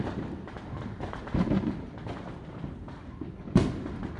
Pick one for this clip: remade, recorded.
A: remade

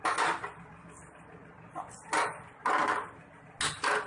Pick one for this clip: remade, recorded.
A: recorded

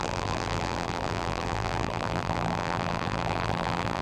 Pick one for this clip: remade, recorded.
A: remade